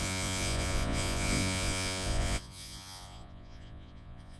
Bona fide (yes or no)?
no